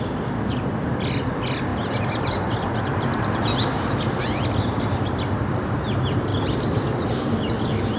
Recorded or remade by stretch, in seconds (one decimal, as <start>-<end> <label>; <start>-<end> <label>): 0.0-8.0 remade